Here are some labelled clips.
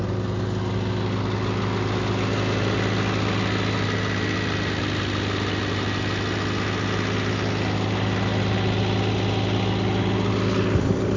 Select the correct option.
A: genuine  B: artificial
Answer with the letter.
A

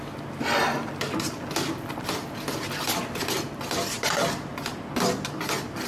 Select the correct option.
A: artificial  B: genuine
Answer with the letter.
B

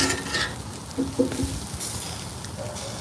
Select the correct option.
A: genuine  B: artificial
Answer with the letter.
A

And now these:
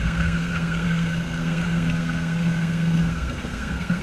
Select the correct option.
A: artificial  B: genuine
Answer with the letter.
A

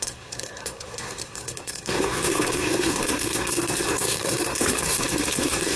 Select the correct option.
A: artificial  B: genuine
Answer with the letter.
A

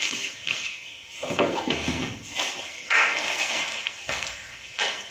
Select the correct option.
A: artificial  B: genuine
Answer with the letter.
A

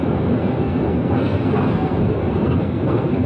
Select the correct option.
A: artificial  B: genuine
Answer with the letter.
A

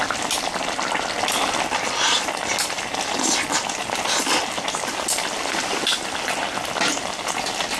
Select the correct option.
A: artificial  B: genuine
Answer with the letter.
B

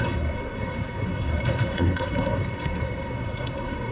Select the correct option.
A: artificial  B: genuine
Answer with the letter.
A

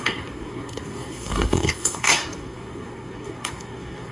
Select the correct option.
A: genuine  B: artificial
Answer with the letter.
B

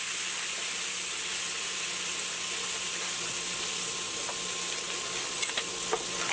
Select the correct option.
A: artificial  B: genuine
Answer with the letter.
B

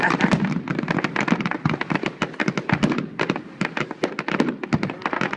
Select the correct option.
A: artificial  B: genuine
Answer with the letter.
B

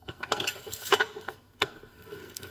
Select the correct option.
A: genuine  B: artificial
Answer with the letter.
B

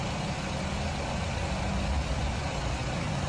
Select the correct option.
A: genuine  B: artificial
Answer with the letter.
A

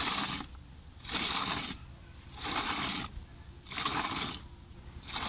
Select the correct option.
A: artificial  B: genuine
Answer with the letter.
B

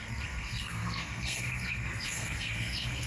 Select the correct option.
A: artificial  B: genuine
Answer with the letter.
A